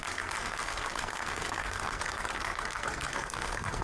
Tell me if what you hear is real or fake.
fake